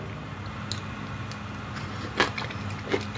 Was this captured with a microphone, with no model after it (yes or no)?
yes